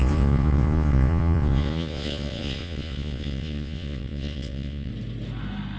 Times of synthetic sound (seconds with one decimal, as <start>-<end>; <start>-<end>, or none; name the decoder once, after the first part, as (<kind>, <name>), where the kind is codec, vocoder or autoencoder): 0.0-4.9 (vocoder, Vocos)